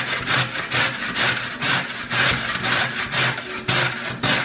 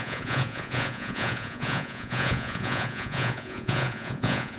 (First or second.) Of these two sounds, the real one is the first